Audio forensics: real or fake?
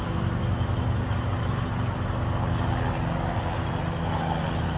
real